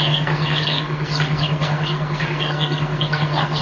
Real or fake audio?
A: fake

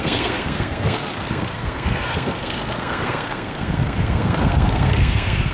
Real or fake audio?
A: fake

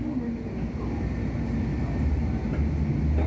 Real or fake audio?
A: real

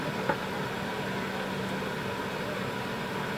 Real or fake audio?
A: real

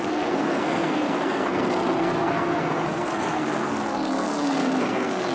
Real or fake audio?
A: fake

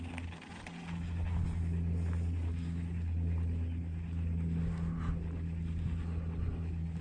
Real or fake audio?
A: real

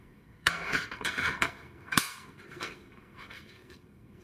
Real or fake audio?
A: fake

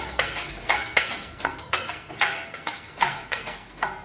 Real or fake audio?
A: fake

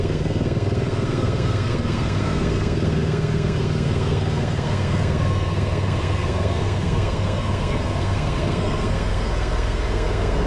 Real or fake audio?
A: fake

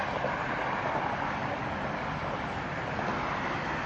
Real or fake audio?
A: real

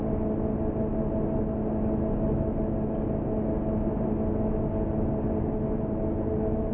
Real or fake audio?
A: real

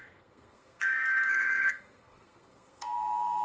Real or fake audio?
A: fake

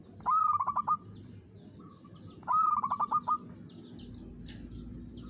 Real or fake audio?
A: real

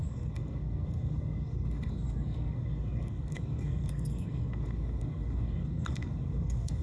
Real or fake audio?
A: fake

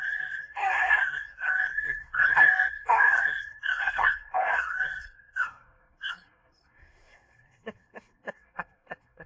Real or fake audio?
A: fake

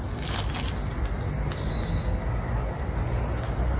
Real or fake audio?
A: real